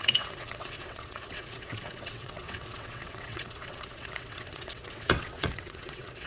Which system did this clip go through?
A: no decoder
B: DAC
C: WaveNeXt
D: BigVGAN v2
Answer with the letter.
C